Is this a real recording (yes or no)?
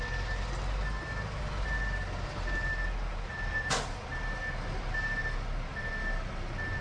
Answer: yes